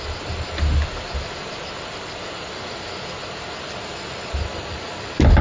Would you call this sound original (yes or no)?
yes